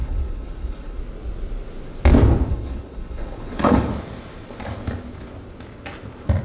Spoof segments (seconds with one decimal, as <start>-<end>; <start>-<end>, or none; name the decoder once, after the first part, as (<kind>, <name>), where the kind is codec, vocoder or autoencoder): 0.0-1.0 (codec, HILCodec); 2.5-3.9